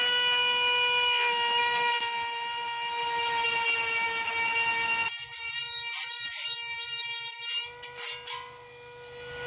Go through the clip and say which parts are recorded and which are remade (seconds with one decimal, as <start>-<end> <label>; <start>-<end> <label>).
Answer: 0.0-9.5 recorded